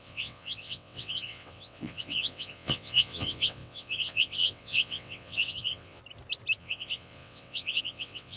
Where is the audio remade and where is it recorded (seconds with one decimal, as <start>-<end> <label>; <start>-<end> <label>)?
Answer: 0.0-6.0 remade; 6.0-6.6 recorded; 6.6-8.4 remade